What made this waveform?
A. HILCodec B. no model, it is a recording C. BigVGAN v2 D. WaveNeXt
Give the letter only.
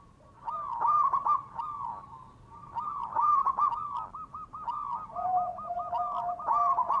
B